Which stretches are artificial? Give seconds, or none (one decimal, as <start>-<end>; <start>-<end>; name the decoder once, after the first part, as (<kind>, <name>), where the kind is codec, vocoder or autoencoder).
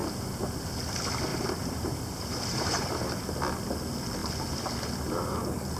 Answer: 1.3-3.2 (vocoder, BigVGAN v2)